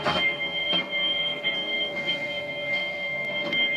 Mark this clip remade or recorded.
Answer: remade